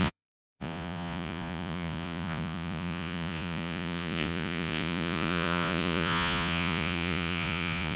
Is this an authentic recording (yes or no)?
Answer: no